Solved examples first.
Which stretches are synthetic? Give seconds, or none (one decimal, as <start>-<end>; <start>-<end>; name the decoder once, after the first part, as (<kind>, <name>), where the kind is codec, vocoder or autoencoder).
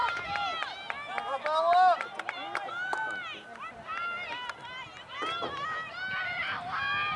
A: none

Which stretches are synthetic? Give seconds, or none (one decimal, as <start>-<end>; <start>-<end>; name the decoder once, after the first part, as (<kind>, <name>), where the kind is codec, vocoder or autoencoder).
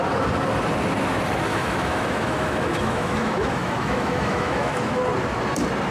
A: 1.5-5.0 (autoencoder, DAC-VAE)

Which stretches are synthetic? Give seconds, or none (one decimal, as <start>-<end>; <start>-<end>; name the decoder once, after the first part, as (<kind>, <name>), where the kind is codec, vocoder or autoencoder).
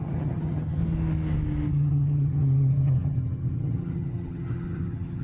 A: 0.0-0.8 (vocoder, HiFi-GAN); 1.7-5.2